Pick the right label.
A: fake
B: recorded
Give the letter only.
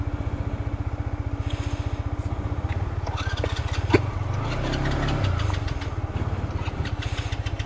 B